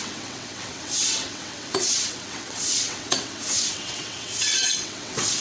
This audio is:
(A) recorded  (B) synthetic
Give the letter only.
B